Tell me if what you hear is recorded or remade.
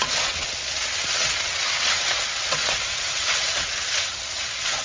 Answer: remade